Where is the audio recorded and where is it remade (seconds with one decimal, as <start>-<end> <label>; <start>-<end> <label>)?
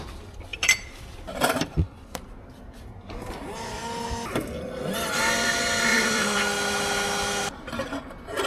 0.0-0.5 recorded; 0.5-2.6 remade; 2.6-5.9 recorded; 5.9-6.4 remade; 6.4-8.5 recorded